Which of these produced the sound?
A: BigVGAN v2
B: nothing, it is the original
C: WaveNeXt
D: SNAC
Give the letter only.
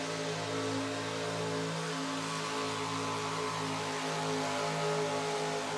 B